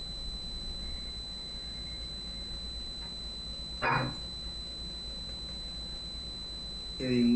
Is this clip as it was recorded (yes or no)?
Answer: yes